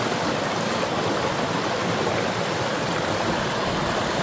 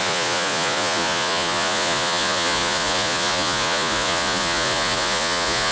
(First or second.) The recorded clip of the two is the first